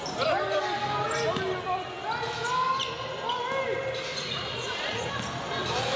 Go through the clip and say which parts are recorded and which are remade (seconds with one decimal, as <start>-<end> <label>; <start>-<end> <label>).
0.0-4.1 recorded; 4.1-5.0 remade; 5.0-6.0 recorded